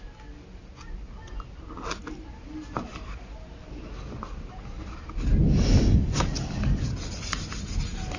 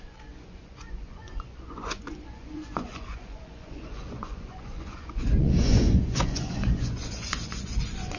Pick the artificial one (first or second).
second